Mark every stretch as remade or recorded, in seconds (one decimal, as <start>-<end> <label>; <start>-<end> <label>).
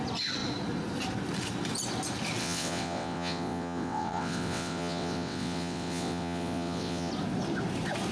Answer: 0.0-2.4 recorded; 2.4-7.1 remade; 7.1-8.1 recorded